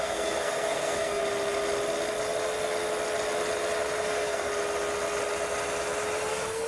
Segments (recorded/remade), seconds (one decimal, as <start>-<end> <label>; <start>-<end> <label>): 0.0-1.2 remade; 1.2-4.0 recorded; 4.0-4.5 remade; 4.5-6.3 recorded; 6.3-6.7 remade